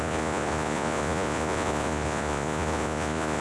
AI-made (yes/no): yes